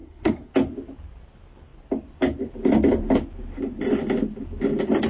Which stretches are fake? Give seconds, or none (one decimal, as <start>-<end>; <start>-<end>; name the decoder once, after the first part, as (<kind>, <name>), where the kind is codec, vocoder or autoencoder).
0.0-0.5 (codec, SNAC)